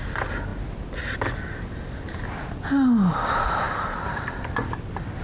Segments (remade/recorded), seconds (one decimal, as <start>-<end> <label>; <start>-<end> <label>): 0.0-5.2 recorded